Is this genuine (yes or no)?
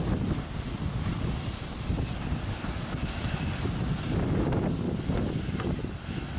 yes